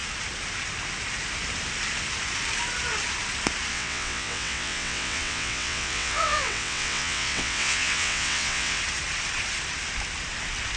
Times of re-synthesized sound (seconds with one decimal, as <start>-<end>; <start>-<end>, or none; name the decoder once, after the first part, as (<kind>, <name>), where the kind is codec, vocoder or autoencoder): 3.7-8.8 (vocoder, WaveNeXt)